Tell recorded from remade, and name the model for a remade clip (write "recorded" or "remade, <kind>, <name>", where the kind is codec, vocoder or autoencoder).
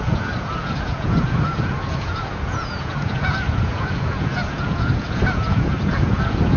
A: remade, vocoder, Vocos